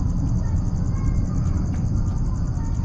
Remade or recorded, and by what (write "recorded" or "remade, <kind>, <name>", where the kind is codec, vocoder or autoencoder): recorded